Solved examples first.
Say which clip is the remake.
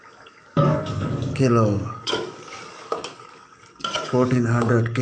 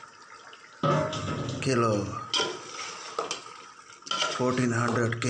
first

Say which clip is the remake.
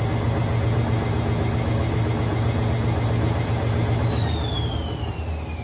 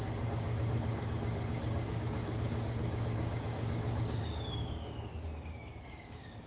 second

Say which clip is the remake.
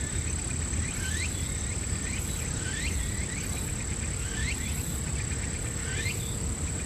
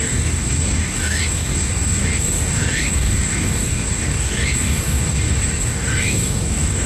second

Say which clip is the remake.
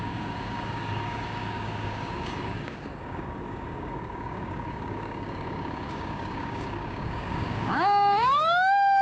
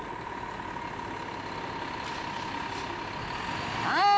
first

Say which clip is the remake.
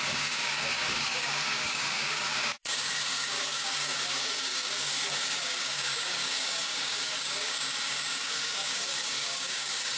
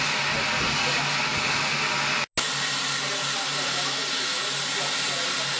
first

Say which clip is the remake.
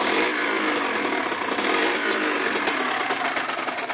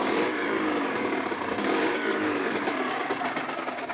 second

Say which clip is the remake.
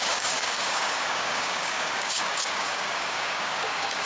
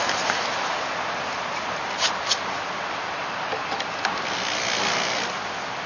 first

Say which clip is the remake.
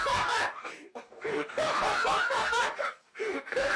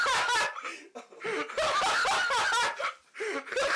first